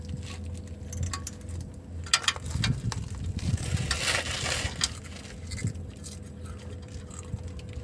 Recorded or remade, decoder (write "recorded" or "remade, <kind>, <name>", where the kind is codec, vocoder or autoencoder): recorded